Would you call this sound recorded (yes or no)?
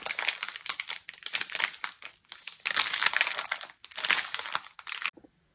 yes